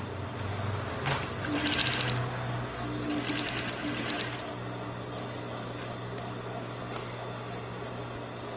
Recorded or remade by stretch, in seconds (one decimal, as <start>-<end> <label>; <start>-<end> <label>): 0.0-8.6 recorded